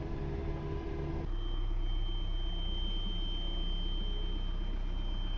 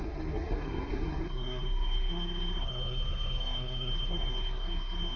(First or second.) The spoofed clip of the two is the second